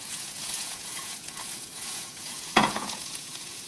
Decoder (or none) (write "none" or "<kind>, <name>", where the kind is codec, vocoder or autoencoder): vocoder, Vocos